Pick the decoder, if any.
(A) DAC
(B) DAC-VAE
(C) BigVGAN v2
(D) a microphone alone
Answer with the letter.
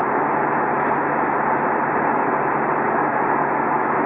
D